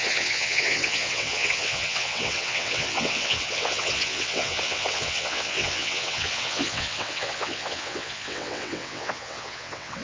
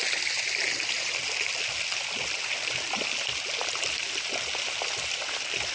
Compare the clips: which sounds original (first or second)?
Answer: second